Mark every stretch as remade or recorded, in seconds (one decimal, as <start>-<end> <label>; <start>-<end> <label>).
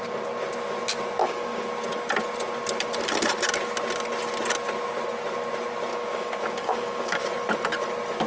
0.0-1.2 recorded; 1.2-1.7 remade; 1.7-5.9 recorded; 5.9-7.2 remade; 7.2-8.3 recorded